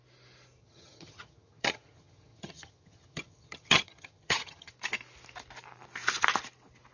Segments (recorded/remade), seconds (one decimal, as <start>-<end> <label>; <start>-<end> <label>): 0.0-0.6 recorded; 0.6-4.7 remade; 4.7-6.9 recorded